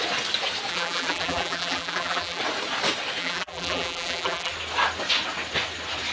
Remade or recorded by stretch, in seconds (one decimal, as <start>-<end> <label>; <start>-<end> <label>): 0.0-0.7 recorded; 0.7-2.4 remade; 2.4-3.2 recorded; 3.2-4.5 remade; 4.5-6.1 recorded